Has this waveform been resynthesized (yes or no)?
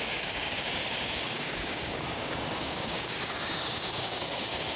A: yes